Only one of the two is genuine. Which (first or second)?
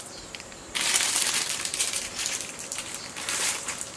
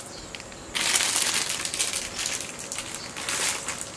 second